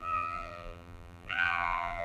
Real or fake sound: fake